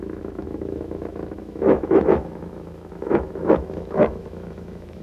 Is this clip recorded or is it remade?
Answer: remade